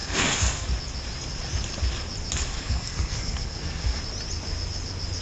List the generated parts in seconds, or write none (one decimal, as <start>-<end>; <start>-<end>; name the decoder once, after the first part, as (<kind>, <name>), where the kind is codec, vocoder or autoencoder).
0.0-0.7 (codec, SNAC); 2.5-4.0